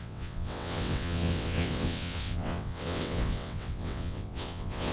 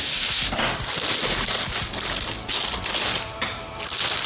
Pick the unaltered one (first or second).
second